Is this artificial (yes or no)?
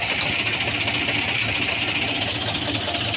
no